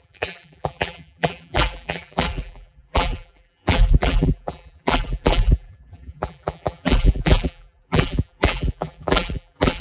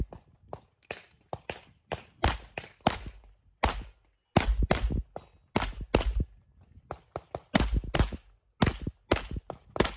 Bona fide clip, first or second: second